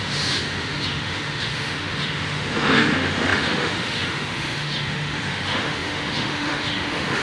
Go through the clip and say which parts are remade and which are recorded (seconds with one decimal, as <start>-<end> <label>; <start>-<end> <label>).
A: 0.0-7.2 remade